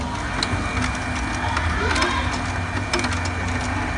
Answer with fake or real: real